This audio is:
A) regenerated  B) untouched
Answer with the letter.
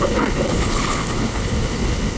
A